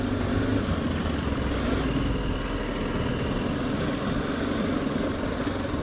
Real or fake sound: real